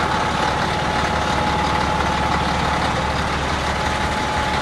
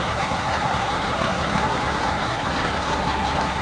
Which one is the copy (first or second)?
second